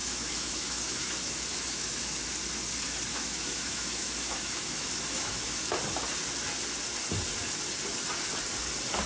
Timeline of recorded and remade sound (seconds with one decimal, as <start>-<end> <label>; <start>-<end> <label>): 0.0-2.2 remade; 2.2-3.1 recorded; 3.1-5.6 remade; 5.6-9.1 recorded